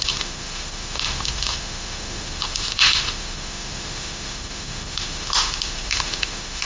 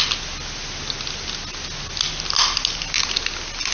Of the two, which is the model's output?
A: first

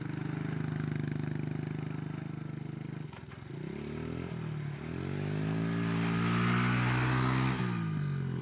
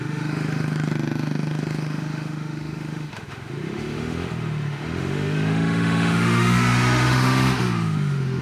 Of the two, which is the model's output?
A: second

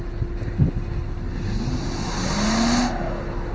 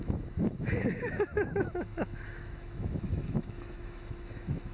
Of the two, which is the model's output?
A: second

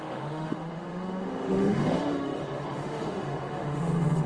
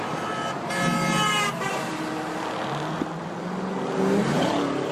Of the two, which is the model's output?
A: first